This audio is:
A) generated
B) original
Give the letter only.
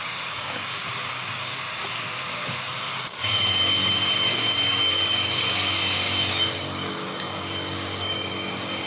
A